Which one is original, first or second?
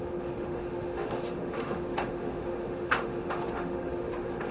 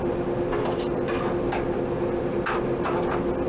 second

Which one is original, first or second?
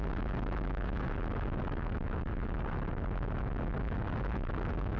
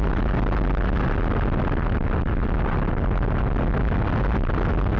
second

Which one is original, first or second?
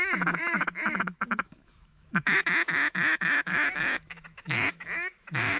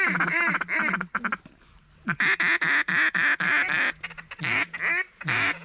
second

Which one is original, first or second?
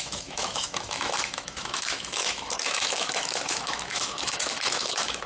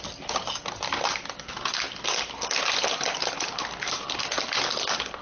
second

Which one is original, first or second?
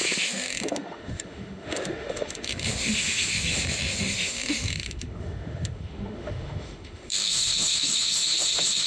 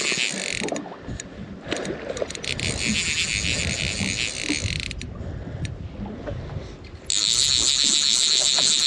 second